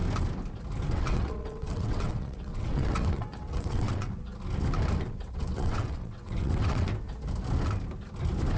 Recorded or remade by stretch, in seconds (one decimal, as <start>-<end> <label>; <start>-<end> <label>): 0.0-0.9 recorded; 0.9-4.3 remade; 4.3-5.0 recorded; 5.0-6.9 remade; 6.9-8.6 recorded